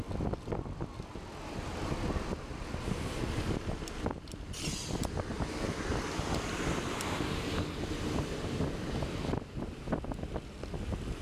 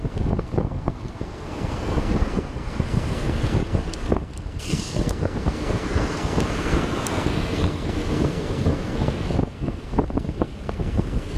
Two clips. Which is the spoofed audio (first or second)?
second